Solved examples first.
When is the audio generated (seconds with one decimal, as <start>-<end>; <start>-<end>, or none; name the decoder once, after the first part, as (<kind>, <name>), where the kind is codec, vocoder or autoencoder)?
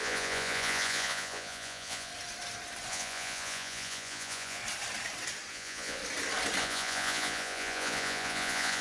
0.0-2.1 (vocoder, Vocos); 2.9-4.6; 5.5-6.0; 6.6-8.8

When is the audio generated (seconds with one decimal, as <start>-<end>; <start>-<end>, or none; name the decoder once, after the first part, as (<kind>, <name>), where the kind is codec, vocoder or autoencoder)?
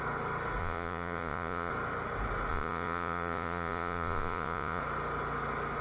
0.6-1.7 (vocoder, Vocos); 2.5-4.8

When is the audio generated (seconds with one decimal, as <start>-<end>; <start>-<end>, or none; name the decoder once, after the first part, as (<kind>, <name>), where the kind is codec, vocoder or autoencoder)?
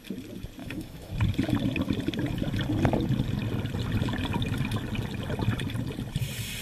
0.6-1.1 (autoencoder, DAC-VAE)